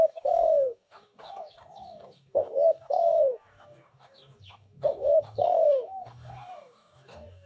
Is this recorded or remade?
remade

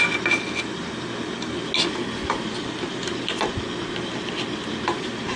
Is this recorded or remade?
recorded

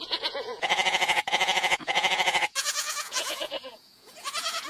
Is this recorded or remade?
remade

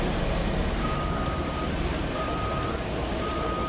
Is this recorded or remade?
remade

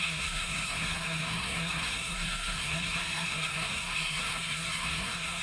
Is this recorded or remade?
remade